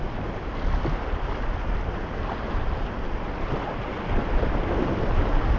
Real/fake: real